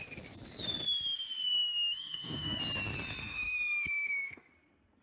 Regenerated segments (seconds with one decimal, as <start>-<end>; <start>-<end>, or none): 1.5-2.6; 3.2-4.5